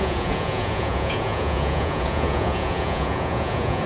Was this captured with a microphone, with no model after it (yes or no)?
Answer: no